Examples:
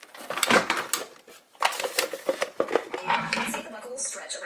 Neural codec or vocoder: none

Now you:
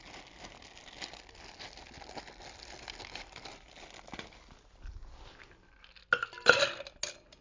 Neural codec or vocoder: none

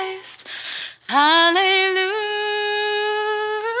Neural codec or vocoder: none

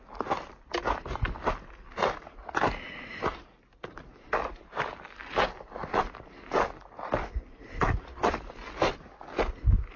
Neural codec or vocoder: none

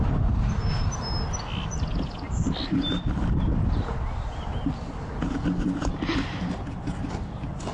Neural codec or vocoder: none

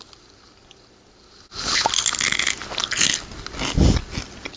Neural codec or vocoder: none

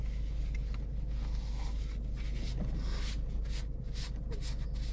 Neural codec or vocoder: none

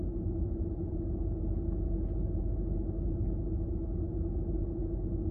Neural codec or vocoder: none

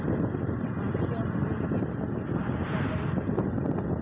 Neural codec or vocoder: none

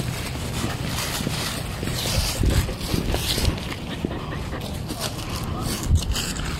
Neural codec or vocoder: vocoder, BigVGAN v2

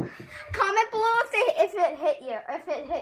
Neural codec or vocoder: vocoder, BigVGAN v2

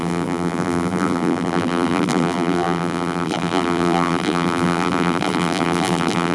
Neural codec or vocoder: vocoder, BigVGAN v2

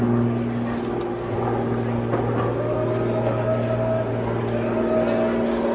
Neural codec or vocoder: none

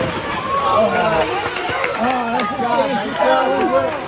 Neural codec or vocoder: none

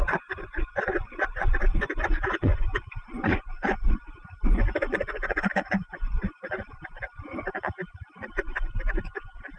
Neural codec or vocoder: vocoder, Vocos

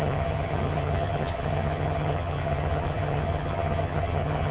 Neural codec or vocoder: vocoder, HiFi-GAN